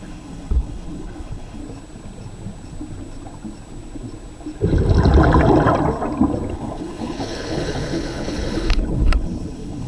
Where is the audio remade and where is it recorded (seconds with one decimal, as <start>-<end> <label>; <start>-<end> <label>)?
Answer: 0.0-1.6 remade; 1.6-6.5 recorded; 6.5-9.9 remade